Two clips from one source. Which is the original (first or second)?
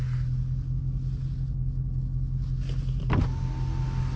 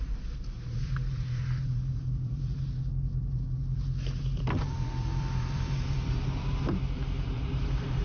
first